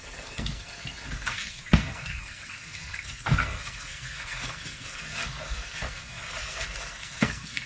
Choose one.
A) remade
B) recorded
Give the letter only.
A